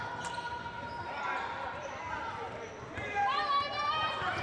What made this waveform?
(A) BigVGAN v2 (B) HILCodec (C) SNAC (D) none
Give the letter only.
D